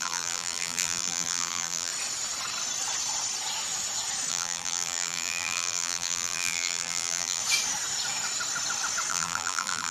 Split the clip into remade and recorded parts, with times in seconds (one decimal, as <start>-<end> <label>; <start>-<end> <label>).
0.0-1.9 remade; 1.9-4.3 recorded; 4.3-7.4 remade; 7.4-9.1 recorded; 9.1-9.9 remade

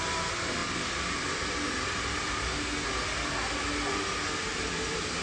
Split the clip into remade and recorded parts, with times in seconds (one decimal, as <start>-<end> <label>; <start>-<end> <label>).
0.0-0.6 recorded; 0.6-2.6 remade; 2.6-4.5 recorded; 4.5-5.2 remade

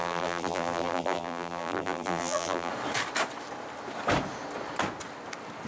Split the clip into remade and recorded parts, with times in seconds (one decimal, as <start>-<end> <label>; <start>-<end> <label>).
0.0-2.7 remade; 2.7-5.7 recorded

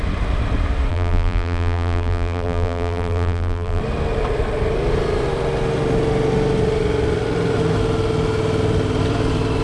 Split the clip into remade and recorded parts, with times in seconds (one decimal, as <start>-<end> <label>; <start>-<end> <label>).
0.0-0.9 recorded; 0.9-3.8 remade; 3.8-9.6 recorded

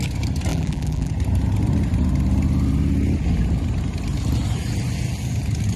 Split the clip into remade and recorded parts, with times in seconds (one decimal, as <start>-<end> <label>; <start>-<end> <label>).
0.0-0.5 recorded; 0.5-1.1 remade; 1.1-5.8 recorded